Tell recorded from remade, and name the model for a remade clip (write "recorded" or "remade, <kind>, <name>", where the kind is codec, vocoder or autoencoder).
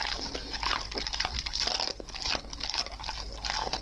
recorded